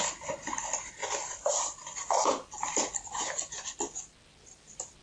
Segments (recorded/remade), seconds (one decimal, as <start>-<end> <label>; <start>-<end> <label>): 0.0-5.0 recorded